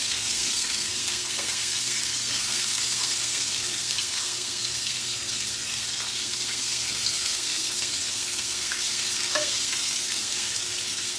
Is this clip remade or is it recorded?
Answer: remade